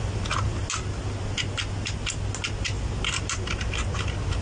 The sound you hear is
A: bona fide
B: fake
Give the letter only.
A